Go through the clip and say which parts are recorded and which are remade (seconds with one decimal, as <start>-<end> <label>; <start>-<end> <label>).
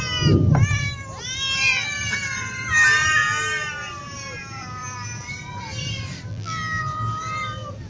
0.0-6.3 recorded; 6.3-6.8 remade; 6.8-7.9 recorded